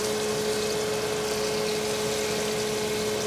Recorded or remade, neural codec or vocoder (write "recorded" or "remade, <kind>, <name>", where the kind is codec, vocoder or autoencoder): recorded